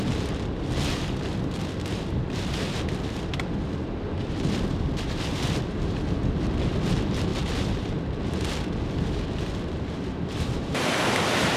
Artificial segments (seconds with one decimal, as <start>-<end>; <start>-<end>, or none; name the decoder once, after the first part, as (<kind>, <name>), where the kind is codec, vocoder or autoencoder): none